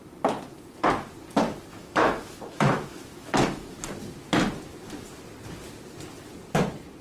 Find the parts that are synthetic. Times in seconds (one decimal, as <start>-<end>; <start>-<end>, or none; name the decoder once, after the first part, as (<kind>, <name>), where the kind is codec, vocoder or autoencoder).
1.7-3.8 (autoencoder, DAC-VAE)